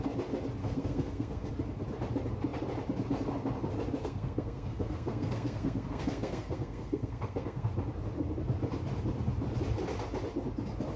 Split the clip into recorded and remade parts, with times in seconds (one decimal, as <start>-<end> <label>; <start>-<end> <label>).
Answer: 0.0-0.6 recorded; 0.6-1.5 remade; 1.5-4.0 recorded; 4.0-7.7 remade; 7.7-11.0 recorded